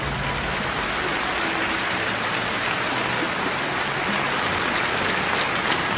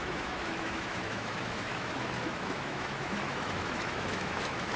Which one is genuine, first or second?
first